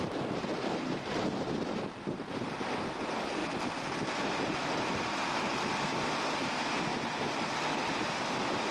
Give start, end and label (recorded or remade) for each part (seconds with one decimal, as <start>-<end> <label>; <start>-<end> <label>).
0.0-8.7 recorded